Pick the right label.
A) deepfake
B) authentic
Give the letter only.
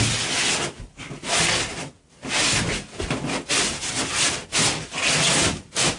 B